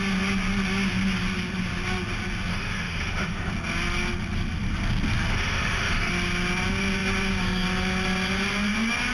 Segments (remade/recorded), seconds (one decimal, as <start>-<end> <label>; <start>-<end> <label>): 0.0-2.5 recorded; 2.5-3.5 remade; 3.5-5.3 recorded; 5.3-6.1 remade; 6.1-9.1 recorded